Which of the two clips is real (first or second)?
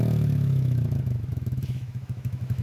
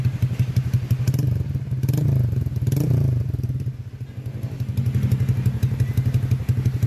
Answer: second